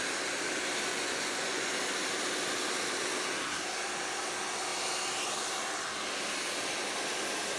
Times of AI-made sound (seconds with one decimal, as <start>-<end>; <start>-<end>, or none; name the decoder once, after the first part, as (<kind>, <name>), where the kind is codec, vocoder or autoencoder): 0.9-1.7 (vocoder, Vocos)